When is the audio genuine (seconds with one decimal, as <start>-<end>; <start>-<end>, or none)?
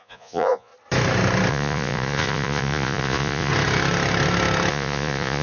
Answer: 0.7-1.5; 3.5-4.7